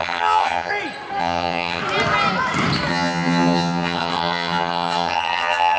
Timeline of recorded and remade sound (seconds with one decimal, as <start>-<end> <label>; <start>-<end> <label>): 0.0-0.7 remade; 0.7-1.2 recorded; 1.2-1.8 remade; 1.8-2.9 recorded; 2.9-5.8 remade